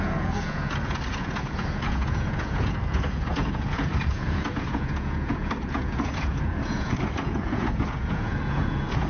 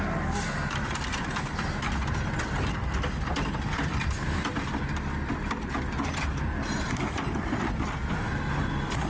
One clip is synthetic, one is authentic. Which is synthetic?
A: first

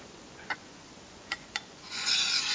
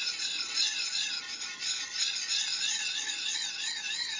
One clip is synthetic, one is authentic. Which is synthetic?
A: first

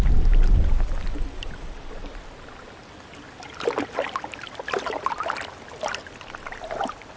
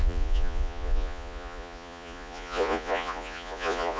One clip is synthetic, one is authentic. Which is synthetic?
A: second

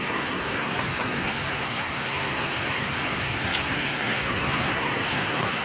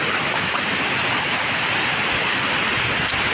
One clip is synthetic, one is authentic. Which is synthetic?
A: first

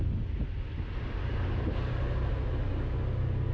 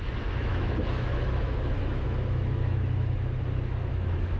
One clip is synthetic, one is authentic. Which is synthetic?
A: second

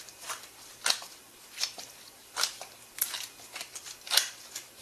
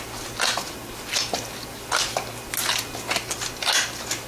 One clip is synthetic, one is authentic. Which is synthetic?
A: first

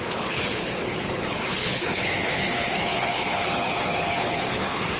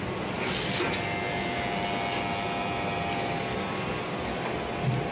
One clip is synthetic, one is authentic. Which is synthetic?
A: first